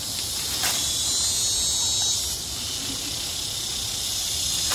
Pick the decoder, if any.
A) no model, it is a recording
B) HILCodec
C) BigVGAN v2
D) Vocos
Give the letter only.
A